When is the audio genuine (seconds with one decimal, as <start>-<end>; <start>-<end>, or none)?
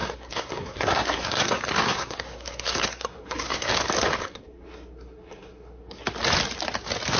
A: 3.7-4.2; 6.0-7.2